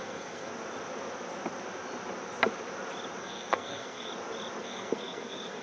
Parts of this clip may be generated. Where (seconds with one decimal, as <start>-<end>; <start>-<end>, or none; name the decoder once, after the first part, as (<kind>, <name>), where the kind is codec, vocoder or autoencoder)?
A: 0.0-0.5 (codec, SNAC); 3.2-4.1; 4.6-5.6